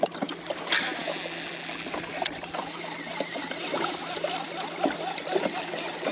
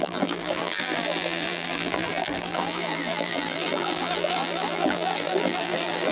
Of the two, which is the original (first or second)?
first